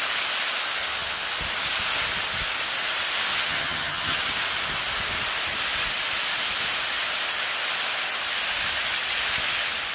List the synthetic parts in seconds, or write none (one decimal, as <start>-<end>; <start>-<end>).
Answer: 0.8-1.3; 3.3-4.2